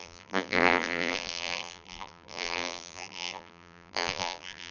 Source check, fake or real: fake